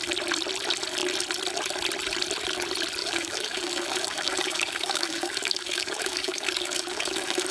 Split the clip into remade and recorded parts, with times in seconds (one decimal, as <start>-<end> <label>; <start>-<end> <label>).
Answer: 0.0-3.0 recorded; 3.0-7.5 remade